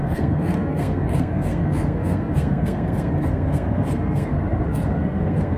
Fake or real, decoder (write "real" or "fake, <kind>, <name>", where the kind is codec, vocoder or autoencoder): fake, codec, SNAC